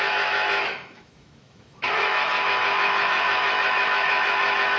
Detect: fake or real fake